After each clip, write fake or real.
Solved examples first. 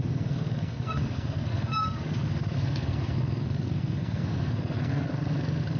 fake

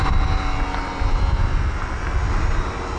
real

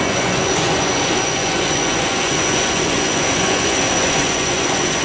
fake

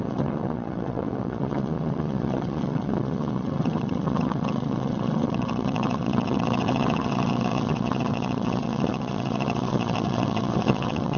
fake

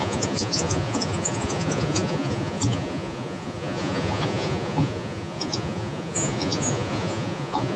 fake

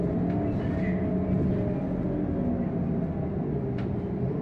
real